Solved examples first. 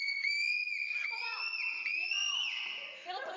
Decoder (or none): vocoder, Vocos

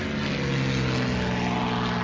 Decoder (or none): none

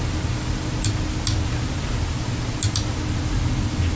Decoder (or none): none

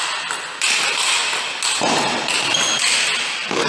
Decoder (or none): none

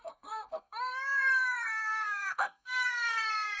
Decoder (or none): codec, SNAC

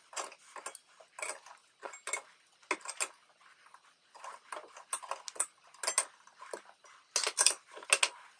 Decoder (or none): none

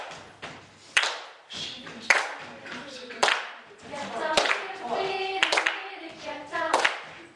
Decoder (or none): vocoder, BigVGAN v2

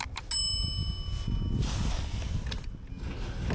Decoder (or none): none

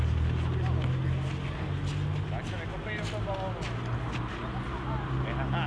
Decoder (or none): none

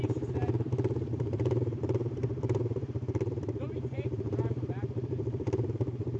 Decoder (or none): vocoder, BigVGAN v2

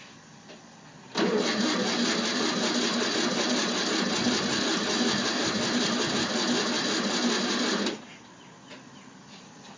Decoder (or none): none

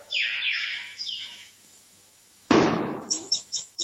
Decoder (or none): autoencoder, DAC-VAE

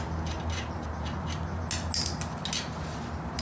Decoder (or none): none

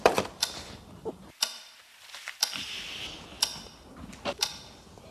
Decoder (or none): vocoder, BigVGAN v2